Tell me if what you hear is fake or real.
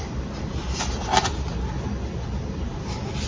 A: real